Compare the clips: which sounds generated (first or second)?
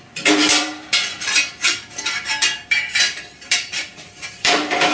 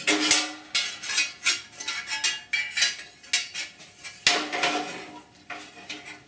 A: first